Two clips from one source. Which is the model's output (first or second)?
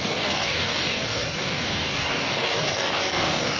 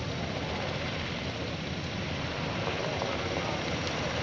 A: first